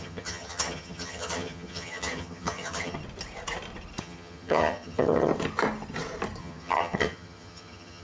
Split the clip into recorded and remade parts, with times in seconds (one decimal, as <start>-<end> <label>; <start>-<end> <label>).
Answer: 0.0-3.0 remade; 3.0-4.0 recorded; 4.0-5.3 remade; 5.3-6.4 recorded; 6.4-8.0 remade